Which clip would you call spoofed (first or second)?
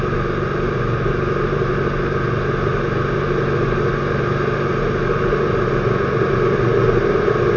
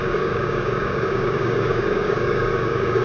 second